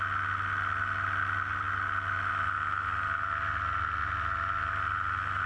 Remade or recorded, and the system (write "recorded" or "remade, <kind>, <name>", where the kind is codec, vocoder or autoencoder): recorded